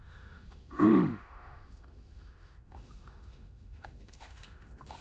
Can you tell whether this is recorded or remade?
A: remade